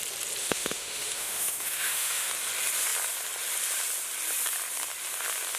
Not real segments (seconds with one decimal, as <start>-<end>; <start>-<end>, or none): 0.4-2.3